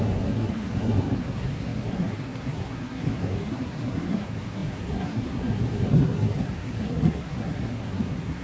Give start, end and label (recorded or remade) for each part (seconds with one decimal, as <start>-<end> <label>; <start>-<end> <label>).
0.0-8.4 remade